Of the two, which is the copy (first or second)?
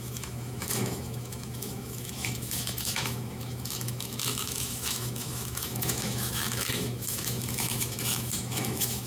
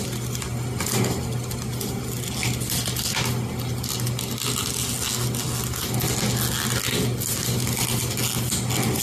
first